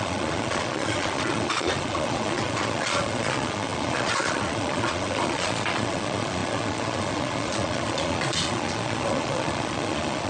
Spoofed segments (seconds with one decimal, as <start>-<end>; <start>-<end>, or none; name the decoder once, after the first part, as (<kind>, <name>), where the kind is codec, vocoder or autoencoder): 0.0-10.3 (vocoder, Vocos)